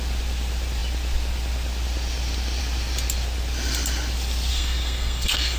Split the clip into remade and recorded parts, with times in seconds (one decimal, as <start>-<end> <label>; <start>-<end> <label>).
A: 0.0-4.5 recorded; 4.5-5.6 remade